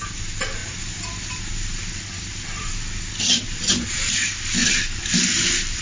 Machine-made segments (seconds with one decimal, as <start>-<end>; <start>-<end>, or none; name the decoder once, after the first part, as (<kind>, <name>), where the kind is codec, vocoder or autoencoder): 0.6-4.1 (vocoder, BigVGAN v2); 4.6-5.8